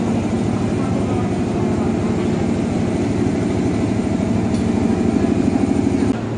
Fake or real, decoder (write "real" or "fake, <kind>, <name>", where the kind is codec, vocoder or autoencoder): real